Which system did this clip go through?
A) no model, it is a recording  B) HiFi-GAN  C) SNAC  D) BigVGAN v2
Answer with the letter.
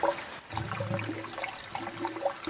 A